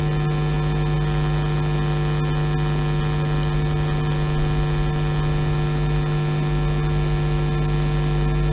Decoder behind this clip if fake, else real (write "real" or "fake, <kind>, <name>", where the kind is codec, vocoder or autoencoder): real